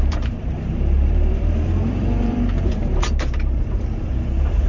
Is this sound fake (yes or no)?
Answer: yes